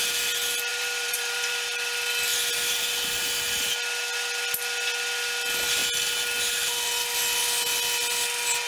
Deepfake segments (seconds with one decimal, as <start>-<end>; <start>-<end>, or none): 0.7-1.5